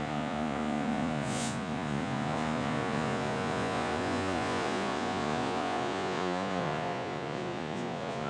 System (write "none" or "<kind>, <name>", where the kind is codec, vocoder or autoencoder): vocoder, Vocos